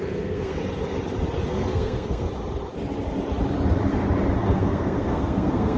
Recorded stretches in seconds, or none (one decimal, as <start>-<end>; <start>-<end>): 0.6-1.5; 2.3-4.4